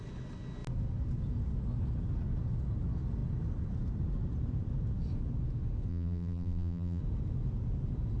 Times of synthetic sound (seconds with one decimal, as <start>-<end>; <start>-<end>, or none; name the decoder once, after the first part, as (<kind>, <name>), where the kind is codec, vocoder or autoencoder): 5.9-7.0 (vocoder, BigVGAN v2)